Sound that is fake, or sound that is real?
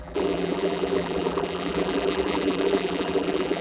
fake